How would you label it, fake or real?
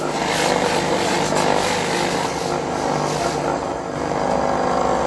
real